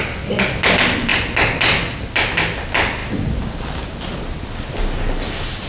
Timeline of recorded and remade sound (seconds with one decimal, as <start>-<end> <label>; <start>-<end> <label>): 0.0-5.7 recorded